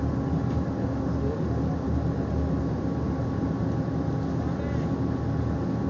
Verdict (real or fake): real